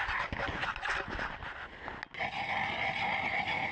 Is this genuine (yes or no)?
yes